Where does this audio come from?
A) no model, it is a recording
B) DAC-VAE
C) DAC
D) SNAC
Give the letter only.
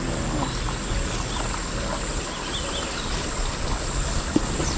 A